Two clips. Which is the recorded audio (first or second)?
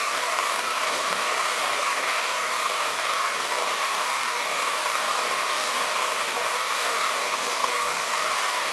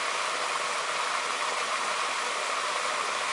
second